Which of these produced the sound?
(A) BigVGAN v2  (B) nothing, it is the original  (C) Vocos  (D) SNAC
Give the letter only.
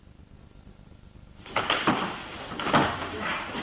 B